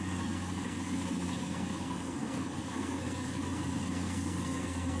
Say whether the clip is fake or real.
fake